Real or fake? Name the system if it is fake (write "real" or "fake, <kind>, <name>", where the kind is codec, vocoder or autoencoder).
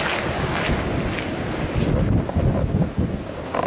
real